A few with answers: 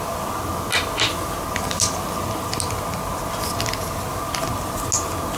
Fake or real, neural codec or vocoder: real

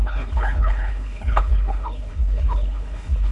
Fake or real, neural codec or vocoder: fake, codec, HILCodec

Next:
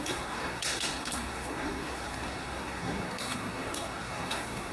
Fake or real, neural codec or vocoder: fake, codec, SNAC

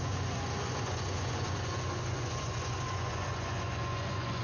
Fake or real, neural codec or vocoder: fake, vocoder, Vocos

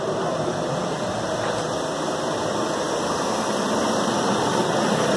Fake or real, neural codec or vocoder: real